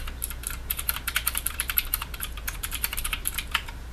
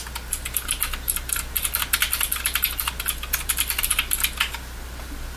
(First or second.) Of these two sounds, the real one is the second